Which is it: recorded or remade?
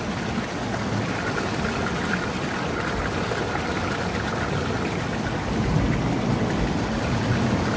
recorded